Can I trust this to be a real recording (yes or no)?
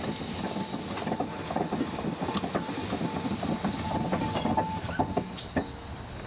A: yes